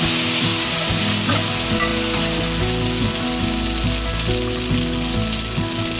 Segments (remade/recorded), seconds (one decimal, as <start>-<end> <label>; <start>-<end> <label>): 0.0-0.5 recorded; 0.5-1.0 remade; 1.0-6.0 recorded